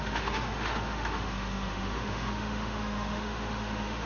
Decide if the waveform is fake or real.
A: fake